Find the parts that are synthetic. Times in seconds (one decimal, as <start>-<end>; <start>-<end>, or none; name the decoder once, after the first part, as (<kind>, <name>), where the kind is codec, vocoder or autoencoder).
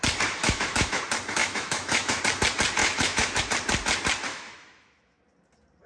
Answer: 0.4-1.0 (autoencoder, DAC-VAE); 1.4-2.2; 2.8-3.4; 4.3-5.2